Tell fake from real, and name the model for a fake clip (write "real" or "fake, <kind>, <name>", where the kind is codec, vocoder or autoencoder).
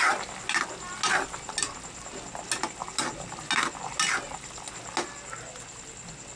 real